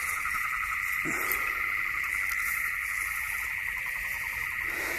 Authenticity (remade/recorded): recorded